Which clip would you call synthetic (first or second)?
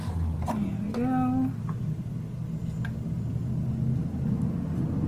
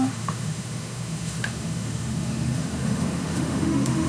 second